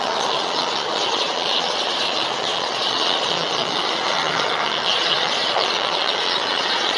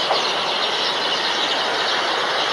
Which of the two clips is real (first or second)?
second